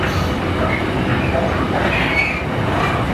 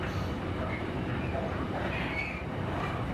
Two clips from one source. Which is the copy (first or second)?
second